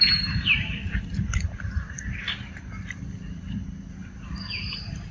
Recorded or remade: remade